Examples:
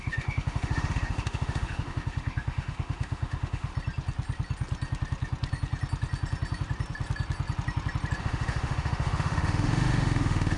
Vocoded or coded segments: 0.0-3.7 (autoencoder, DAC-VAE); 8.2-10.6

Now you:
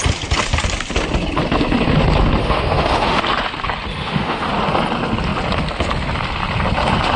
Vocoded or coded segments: 2.4-3.2 (autoencoder, DAC-VAE); 3.9-4.5

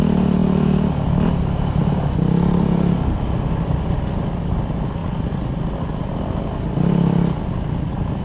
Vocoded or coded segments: none

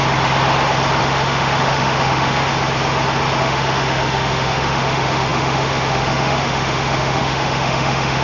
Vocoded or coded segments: 1.0-2.5 (autoencoder, DAC-VAE); 3.4-8.2

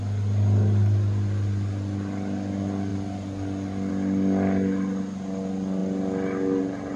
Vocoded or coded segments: none

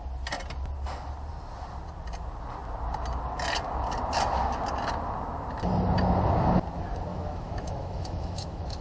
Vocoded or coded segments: 7.1-8.8 (autoencoder, DAC-VAE)

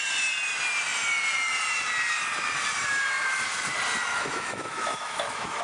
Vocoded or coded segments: 4.1-5.6 (autoencoder, DAC-VAE)

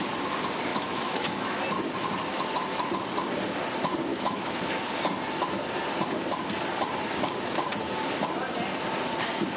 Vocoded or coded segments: 0.7-1.6 (autoencoder, DAC-VAE); 4.1-4.8